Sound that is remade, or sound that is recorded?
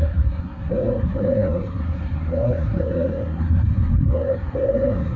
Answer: remade